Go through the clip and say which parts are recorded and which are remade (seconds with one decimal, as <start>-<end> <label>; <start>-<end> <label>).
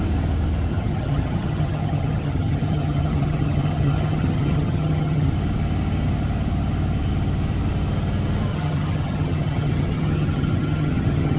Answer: 0.0-0.7 recorded; 0.7-5.3 remade; 5.3-8.5 recorded; 8.5-11.4 remade